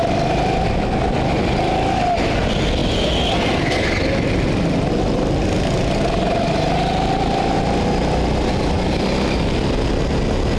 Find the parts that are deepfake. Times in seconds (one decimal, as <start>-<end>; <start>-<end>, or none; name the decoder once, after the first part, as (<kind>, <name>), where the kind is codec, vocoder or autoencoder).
none